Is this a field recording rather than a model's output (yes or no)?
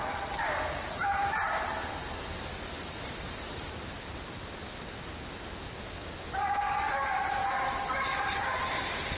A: yes